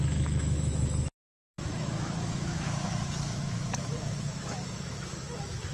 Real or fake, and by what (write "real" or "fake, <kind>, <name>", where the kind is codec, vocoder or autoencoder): fake, autoencoder, DAC-VAE